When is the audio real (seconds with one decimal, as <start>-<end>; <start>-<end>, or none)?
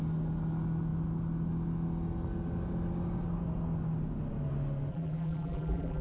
0.0-4.9